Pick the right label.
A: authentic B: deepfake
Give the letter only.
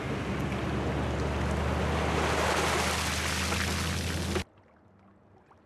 A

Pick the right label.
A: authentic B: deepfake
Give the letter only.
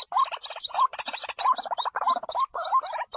B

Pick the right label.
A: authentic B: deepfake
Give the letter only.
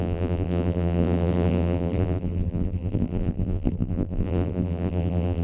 B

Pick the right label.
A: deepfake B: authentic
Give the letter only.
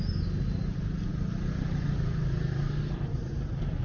B